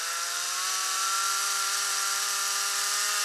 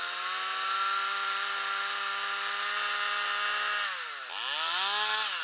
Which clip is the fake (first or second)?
first